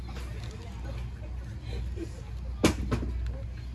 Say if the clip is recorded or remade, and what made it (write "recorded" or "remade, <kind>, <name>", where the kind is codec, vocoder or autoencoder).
recorded